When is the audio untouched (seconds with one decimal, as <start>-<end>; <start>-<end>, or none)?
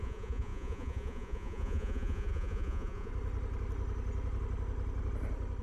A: 3.1-5.6